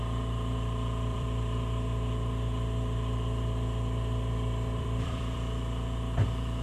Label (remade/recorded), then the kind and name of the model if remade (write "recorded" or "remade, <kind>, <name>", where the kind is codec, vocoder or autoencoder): remade, vocoder, BigVGAN v2